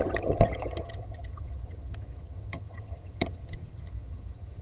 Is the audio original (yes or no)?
no